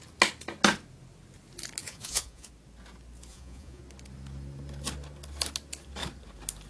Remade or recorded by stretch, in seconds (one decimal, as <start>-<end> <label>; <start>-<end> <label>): 0.0-1.8 recorded; 1.8-2.5 remade; 2.5-3.3 recorded; 3.3-3.8 remade; 3.8-6.7 recorded